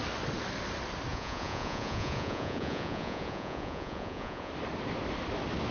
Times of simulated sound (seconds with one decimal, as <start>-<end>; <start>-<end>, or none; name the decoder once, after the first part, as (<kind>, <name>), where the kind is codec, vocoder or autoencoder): 1.1-4.5 (vocoder, Vocos)